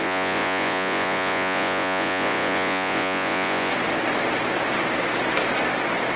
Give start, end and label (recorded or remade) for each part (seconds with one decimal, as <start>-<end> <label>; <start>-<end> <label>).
0.0-3.7 remade; 3.7-6.2 recorded